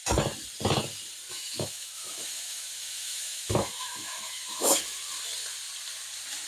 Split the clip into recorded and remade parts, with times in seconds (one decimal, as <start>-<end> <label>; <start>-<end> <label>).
0.0-1.3 recorded; 1.3-5.0 remade; 5.0-6.5 recorded